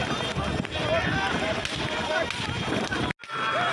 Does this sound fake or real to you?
real